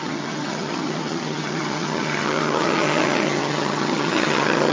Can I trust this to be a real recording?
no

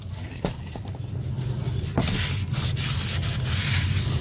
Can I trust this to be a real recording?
yes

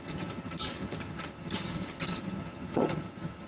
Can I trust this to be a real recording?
no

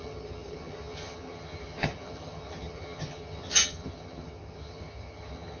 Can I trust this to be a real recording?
no